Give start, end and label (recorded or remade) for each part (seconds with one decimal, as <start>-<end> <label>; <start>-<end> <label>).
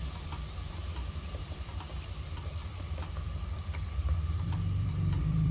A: 0.0-0.8 remade; 0.8-1.4 recorded; 1.4-5.5 remade